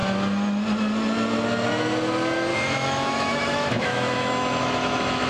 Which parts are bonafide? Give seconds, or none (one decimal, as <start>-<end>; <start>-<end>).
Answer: 0.0-2.5